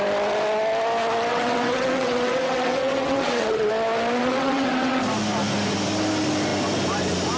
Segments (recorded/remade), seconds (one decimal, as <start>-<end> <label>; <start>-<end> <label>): 0.0-1.3 recorded; 1.3-3.7 remade; 3.7-4.2 recorded; 4.2-5.0 remade; 5.0-7.4 recorded